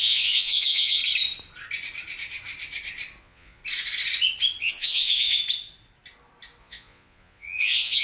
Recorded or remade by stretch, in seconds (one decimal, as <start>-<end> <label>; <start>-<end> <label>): 0.0-1.0 remade; 1.0-3.2 recorded; 3.2-3.6 remade; 3.6-4.6 recorded; 4.6-5.4 remade; 5.4-6.6 recorded; 6.6-8.0 remade